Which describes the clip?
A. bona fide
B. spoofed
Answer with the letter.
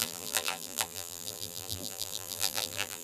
B